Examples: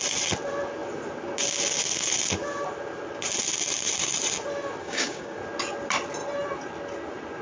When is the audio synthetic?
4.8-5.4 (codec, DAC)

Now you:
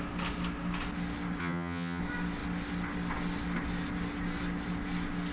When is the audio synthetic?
1.4-2.0 (vocoder, HiFi-GAN)